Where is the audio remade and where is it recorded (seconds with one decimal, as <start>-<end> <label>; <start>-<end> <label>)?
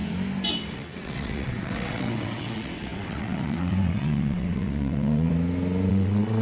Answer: 0.0-0.7 recorded; 0.7-5.3 remade; 5.3-5.9 recorded; 5.9-6.4 remade